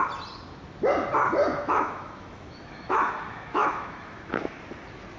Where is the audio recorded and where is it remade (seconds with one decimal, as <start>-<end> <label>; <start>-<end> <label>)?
0.0-1.5 recorded; 1.5-4.6 remade; 4.6-5.2 recorded